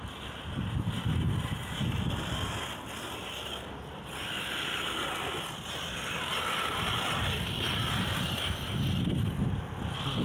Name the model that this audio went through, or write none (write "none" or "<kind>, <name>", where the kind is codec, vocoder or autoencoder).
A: none